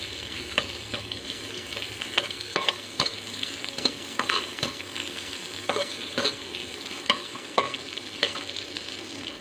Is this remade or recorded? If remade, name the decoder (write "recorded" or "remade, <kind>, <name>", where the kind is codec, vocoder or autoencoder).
remade, codec, SNAC